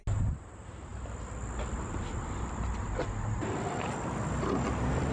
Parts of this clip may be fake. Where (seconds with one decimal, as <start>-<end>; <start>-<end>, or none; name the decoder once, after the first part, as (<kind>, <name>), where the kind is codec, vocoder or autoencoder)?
none